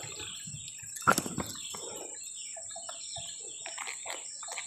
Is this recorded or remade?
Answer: recorded